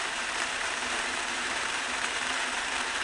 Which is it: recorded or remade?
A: remade